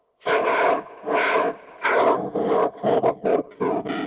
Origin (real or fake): real